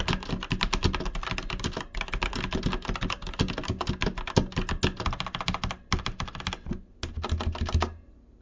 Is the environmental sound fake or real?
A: real